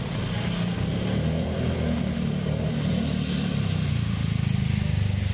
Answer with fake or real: real